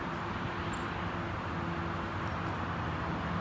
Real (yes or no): yes